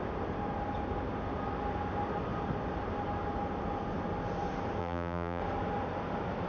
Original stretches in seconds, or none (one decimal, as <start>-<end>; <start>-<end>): 0.0-4.8; 5.4-6.5